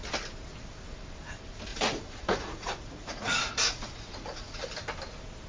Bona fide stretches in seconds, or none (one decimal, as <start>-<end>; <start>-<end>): 0.0-1.7; 4.6-5.5